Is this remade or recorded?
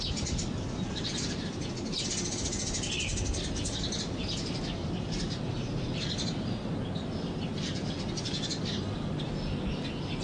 recorded